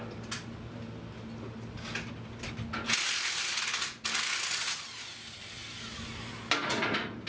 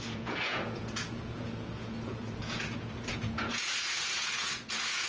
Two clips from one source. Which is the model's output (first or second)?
second